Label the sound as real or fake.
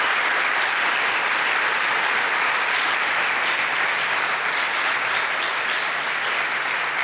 real